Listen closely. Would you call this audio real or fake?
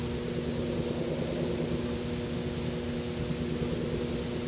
real